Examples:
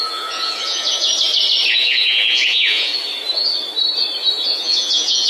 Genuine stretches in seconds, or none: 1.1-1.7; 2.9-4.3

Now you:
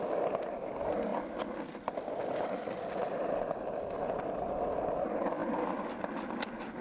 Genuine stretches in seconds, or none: 0.0-6.8

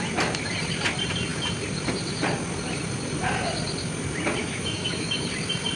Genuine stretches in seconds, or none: 0.0-4.4; 5.2-5.8

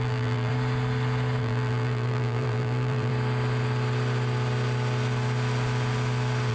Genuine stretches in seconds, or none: 0.5-1.4; 3.1-6.5

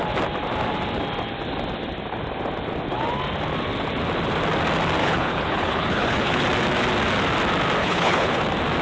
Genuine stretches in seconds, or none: 0.0-5.0; 6.4-7.8; 8.4-8.8

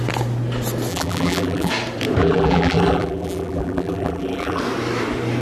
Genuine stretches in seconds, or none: 0.0-0.9; 1.7-2.2; 4.6-5.4

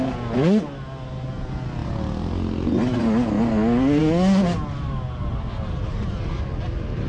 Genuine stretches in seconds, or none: 0.0-7.1